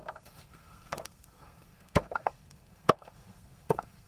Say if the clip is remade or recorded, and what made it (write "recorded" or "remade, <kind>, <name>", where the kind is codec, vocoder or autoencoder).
remade, codec, SNAC